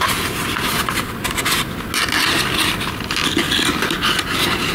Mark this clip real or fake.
real